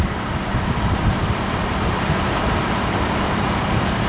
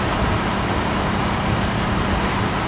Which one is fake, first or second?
first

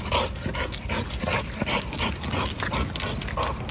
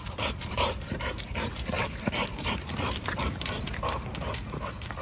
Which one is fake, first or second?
second